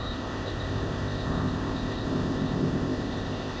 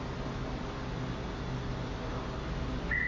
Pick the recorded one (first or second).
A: second